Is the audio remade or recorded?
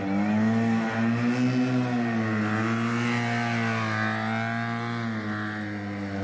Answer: recorded